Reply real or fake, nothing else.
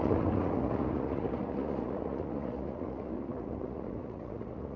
fake